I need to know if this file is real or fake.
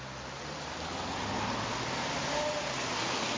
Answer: real